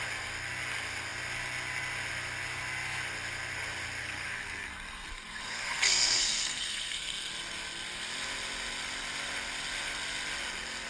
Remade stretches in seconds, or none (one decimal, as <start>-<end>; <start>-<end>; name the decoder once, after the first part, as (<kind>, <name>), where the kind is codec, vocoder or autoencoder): 4.0-7.3 (codec, SNAC)